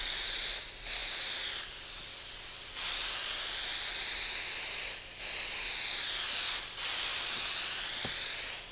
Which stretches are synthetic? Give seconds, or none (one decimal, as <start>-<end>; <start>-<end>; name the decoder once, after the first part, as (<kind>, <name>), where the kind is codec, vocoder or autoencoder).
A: none